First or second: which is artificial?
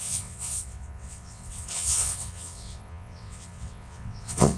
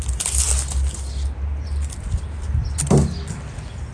first